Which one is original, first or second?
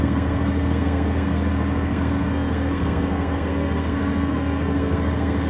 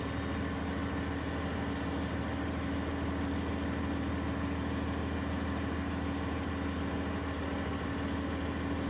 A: second